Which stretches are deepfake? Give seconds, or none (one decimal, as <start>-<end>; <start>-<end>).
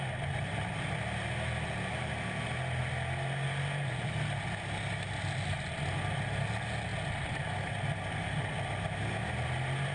none